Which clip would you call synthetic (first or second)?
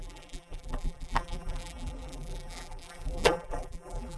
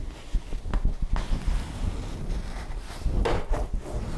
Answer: first